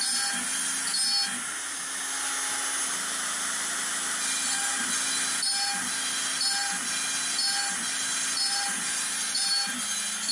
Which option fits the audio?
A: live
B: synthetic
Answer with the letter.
A